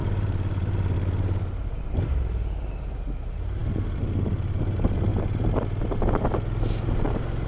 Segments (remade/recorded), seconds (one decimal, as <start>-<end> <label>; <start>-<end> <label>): 0.0-5.1 remade; 5.1-6.8 recorded; 6.8-7.5 remade